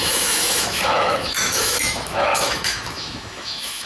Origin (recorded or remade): remade